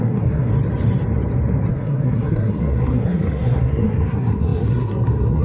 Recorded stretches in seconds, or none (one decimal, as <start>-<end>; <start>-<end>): 0.5-1.7